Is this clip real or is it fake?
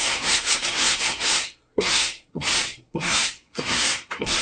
fake